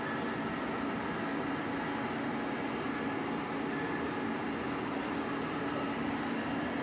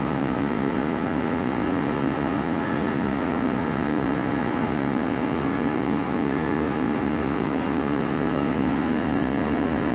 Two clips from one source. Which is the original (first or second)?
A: first